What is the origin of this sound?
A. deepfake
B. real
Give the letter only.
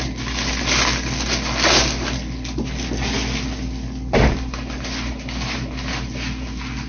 B